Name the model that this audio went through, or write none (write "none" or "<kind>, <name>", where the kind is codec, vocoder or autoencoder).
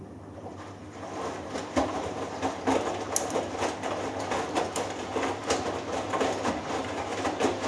none